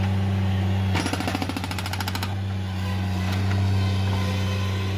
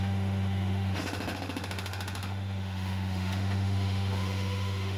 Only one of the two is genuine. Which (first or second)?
first